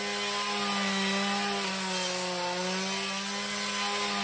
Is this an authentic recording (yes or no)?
yes